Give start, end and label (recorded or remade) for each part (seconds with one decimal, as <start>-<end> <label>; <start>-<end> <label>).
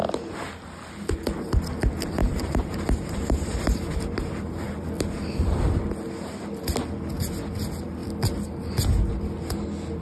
0.0-2.2 recorded; 2.2-4.8 remade; 4.8-10.0 recorded